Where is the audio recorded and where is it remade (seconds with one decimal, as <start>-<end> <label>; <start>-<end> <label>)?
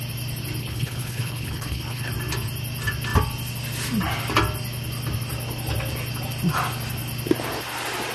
0.0-0.6 recorded; 0.6-2.1 remade; 2.1-8.1 recorded